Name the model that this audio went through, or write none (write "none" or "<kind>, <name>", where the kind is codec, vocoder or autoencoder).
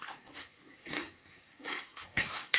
codec, SNAC